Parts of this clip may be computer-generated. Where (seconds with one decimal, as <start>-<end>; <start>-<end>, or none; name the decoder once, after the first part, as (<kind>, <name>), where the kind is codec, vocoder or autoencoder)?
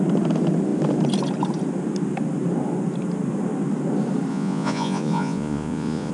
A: 4.3-6.1 (vocoder, Vocos)